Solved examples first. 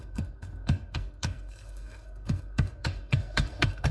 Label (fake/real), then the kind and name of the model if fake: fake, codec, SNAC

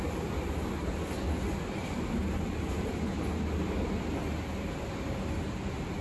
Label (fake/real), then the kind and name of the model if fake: real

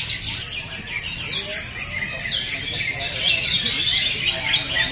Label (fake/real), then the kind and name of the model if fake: real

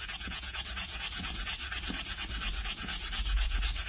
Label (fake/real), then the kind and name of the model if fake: fake, vocoder, Vocos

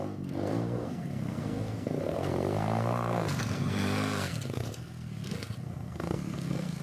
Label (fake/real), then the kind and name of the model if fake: fake, codec, SNAC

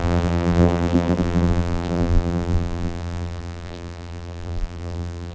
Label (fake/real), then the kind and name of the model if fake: fake, vocoder, BigVGAN v2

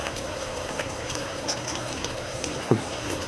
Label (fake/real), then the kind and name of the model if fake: fake, codec, SNAC